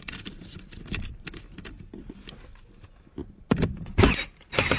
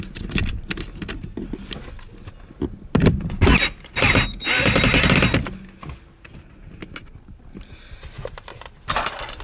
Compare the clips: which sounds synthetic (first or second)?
first